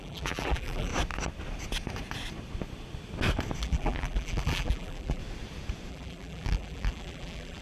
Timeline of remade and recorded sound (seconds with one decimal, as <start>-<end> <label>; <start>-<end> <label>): 0.0-0.9 remade; 0.9-3.6 recorded; 3.6-5.2 remade; 5.2-5.9 recorded; 5.9-7.6 remade